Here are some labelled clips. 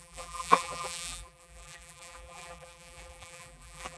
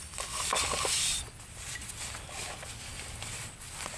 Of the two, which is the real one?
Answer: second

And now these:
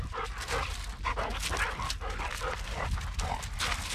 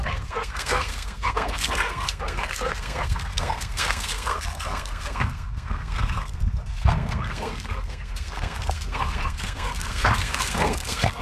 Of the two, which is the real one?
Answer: first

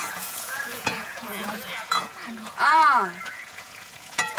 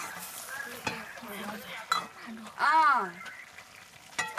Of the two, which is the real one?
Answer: second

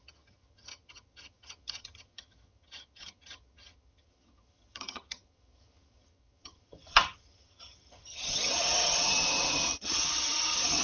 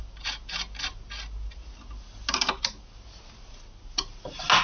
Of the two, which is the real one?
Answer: second